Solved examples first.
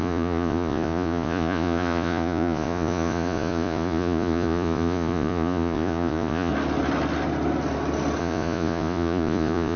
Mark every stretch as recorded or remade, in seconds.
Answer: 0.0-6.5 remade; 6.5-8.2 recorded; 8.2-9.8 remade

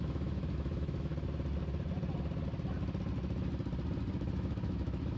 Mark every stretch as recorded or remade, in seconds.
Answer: 0.0-1.1 remade; 1.1-4.1 recorded; 4.1-5.2 remade

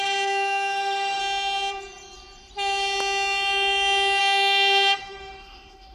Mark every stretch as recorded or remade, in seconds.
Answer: 0.0-1.2 remade; 1.2-4.2 recorded; 4.2-5.9 remade

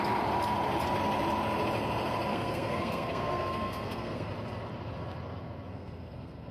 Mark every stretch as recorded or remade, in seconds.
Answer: 0.0-2.3 recorded; 2.3-4.3 remade; 4.3-5.7 recorded; 5.7-6.5 remade

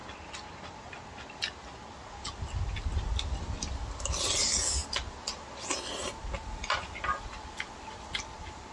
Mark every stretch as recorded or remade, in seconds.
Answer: 0.0-8.7 recorded